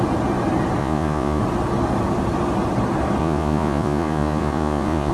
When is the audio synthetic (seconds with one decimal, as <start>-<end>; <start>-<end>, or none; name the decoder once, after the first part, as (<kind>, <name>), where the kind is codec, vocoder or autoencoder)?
0.8-1.4 (vocoder, Vocos); 3.2-5.1